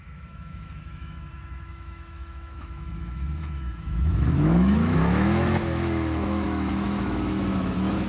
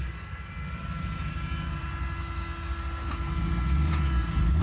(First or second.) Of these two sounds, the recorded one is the second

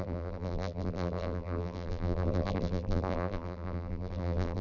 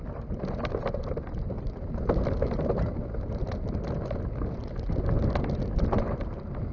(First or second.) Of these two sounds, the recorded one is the second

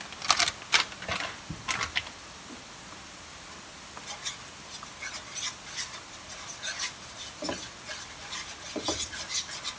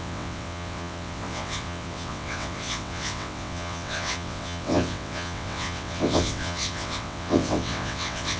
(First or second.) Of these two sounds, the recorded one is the first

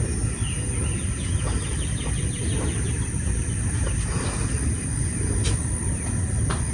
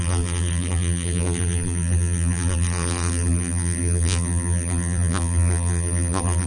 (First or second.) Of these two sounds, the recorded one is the first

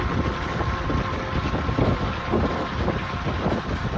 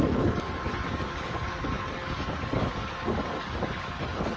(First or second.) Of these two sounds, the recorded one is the first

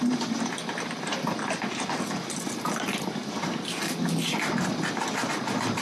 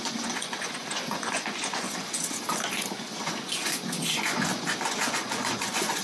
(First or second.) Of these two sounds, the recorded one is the first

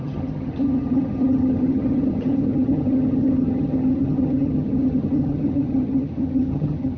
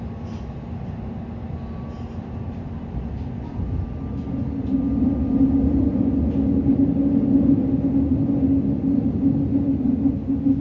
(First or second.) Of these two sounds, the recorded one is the second